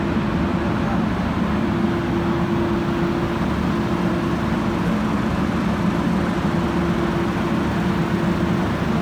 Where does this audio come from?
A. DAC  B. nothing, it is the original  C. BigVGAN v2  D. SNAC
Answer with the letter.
B